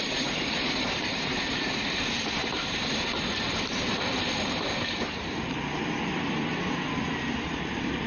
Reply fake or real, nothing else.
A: fake